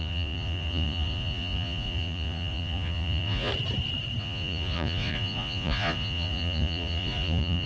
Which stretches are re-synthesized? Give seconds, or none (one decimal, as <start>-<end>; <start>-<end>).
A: 0.0-3.5; 4.2-7.7